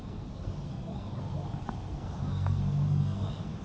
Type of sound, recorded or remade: remade